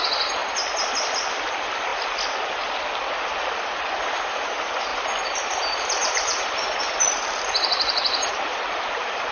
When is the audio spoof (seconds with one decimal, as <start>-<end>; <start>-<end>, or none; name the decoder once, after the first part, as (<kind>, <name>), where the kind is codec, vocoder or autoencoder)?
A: 4.9-8.3 (vocoder, BigVGAN v2)